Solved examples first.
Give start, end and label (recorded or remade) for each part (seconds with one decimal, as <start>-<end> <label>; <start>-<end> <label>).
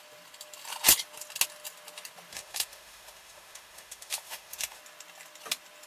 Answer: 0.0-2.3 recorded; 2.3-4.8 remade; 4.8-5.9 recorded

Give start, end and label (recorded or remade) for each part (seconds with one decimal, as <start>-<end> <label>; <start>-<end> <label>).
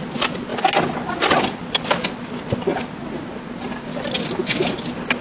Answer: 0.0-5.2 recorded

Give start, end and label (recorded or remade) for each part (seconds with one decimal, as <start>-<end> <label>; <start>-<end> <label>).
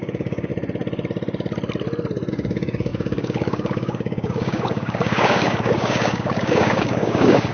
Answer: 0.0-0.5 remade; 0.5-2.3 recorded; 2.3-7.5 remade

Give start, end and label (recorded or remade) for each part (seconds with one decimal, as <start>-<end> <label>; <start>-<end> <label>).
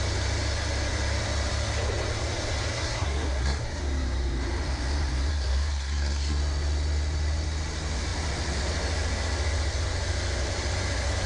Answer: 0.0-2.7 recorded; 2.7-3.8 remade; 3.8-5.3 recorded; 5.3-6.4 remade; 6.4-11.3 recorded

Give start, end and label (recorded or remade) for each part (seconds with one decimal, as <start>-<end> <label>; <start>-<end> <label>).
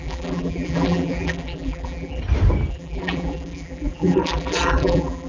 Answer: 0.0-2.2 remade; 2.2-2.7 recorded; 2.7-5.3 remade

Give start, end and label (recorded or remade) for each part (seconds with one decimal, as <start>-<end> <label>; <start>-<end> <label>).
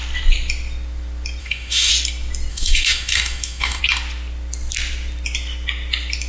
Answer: 0.0-1.4 recorded; 1.4-1.9 remade; 1.9-2.5 recorded; 2.5-3.8 remade; 3.8-6.3 recorded